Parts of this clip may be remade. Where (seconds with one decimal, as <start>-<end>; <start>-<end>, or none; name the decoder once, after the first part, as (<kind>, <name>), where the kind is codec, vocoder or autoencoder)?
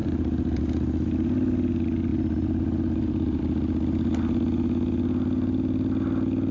0.0-0.6 (vocoder, BigVGAN v2); 2.1-3.4